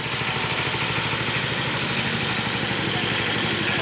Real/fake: real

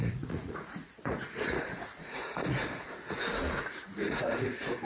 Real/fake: fake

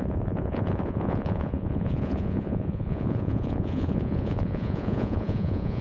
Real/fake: fake